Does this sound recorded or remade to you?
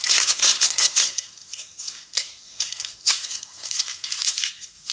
remade